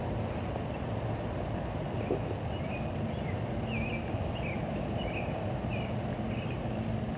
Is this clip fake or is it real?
real